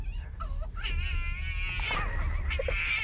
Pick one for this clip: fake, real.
real